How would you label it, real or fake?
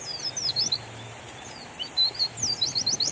real